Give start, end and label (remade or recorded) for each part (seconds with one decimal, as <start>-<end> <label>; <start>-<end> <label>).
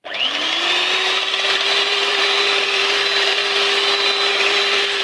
0.0-3.4 remade; 3.4-4.3 recorded; 4.3-5.0 remade